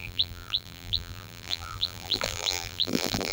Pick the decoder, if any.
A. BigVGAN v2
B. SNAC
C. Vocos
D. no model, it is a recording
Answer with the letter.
A